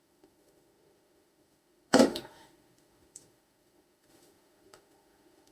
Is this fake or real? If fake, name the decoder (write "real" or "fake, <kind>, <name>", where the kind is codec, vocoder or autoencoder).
fake, autoencoder, DAC-VAE